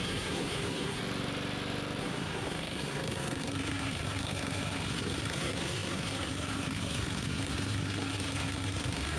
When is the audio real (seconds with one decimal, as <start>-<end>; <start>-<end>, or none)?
1.0-2.0